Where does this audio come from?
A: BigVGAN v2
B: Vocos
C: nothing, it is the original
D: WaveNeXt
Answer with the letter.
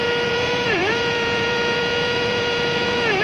B